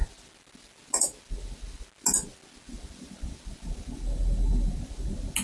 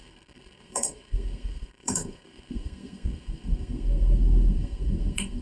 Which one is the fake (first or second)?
second